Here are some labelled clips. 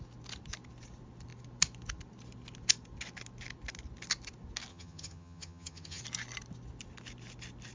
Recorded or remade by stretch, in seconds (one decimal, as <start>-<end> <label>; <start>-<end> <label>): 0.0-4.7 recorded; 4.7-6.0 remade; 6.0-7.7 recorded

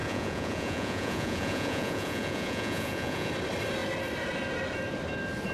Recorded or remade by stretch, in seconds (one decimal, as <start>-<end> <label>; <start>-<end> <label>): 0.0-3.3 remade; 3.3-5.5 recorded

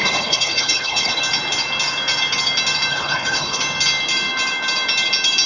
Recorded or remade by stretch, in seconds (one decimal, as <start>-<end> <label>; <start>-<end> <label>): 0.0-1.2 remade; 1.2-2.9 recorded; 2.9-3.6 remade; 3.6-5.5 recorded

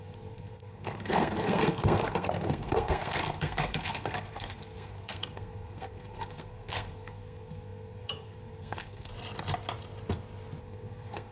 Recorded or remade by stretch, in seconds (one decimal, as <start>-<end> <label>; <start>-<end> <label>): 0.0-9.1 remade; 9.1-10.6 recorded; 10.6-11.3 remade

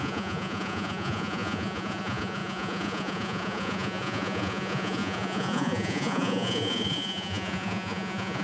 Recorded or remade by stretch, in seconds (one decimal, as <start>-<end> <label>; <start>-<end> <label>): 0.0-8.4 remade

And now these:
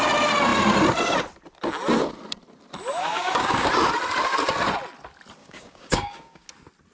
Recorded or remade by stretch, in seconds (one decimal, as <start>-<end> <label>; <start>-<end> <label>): 0.0-3.0 recorded; 3.0-3.7 remade; 3.7-5.4 recorded; 5.4-6.5 remade; 6.5-6.9 recorded

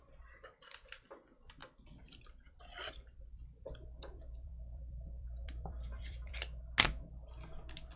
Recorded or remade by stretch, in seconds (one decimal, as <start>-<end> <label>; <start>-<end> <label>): 0.0-1.6 recorded; 1.6-6.4 remade; 6.4-8.0 recorded

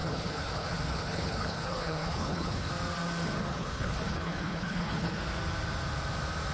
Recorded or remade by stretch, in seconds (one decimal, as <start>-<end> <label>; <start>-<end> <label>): 0.0-2.7 remade; 2.7-3.5 recorded; 3.5-5.2 remade; 5.2-6.5 recorded